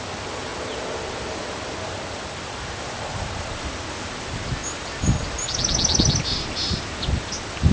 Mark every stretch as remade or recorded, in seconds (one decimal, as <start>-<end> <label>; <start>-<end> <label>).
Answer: 0.0-7.7 recorded